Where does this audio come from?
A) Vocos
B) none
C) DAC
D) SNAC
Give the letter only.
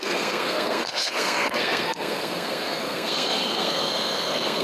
D